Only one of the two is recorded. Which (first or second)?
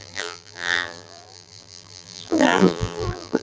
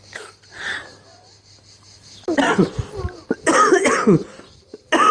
second